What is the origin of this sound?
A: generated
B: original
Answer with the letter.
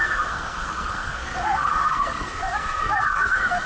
A